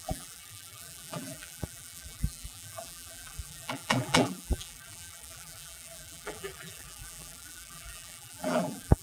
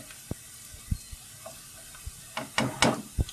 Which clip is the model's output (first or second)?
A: first